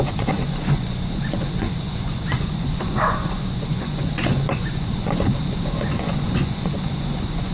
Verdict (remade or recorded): remade